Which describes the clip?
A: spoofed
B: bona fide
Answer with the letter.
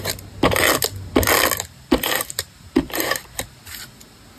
B